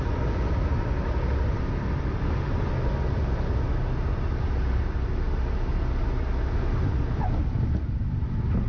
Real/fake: real